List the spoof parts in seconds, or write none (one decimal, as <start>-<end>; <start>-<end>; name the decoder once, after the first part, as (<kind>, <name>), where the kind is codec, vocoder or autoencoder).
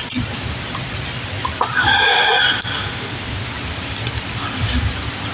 none